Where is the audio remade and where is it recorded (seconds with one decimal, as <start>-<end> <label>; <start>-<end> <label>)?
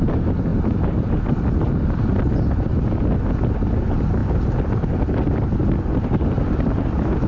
0.0-2.7 remade; 2.7-3.8 recorded; 3.8-5.6 remade; 5.6-6.2 recorded; 6.2-7.3 remade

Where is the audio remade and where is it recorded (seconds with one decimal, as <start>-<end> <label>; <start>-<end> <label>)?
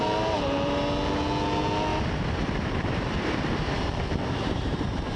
0.0-0.8 remade; 0.8-1.9 recorded; 1.9-5.2 remade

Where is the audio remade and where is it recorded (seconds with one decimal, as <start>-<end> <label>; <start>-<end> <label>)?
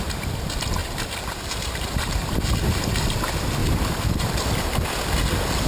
0.0-0.8 recorded; 0.8-2.4 remade; 2.4-3.6 recorded; 3.6-4.9 remade; 4.9-5.7 recorded